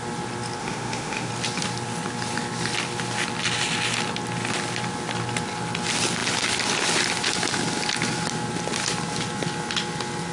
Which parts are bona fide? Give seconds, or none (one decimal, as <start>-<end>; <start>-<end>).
0.0-0.6; 1.3-10.3